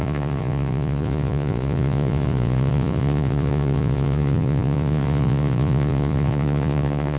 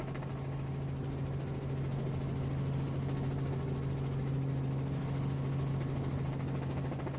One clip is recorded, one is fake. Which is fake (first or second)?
first